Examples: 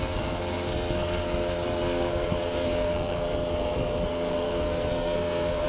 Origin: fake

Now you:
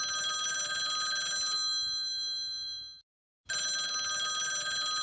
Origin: real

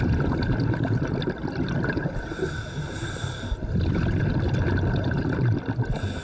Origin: real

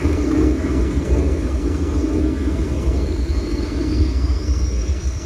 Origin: fake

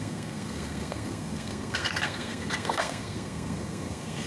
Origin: fake